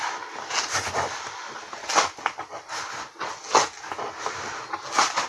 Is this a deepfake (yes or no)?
no